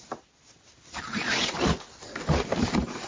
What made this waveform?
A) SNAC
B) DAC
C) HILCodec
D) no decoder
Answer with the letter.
D